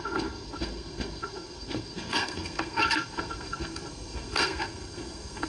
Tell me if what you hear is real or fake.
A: fake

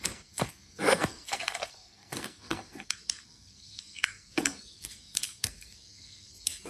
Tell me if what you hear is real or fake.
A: fake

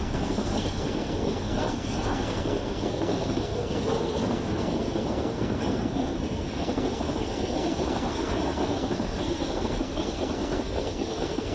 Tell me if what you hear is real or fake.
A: fake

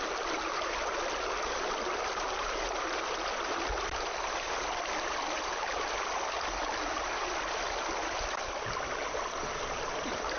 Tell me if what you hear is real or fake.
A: real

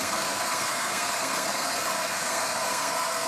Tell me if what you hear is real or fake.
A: fake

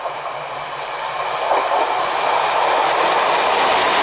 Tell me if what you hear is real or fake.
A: real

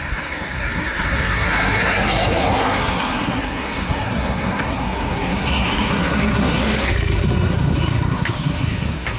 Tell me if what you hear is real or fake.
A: fake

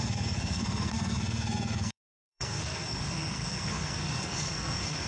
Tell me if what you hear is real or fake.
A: fake